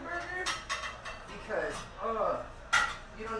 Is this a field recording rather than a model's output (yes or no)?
yes